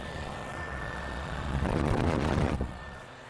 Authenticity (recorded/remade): remade